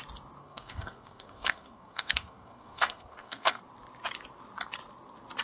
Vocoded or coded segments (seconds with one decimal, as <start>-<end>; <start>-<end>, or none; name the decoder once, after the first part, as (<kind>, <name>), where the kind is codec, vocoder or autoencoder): 0.4-3.6 (codec, SNAC)